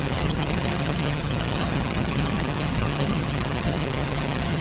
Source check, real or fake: fake